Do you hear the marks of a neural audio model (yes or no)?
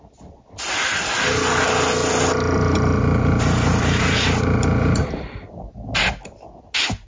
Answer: no